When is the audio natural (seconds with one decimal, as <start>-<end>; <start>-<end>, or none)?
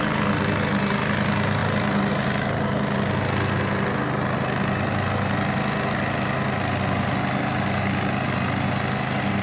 0.0-9.4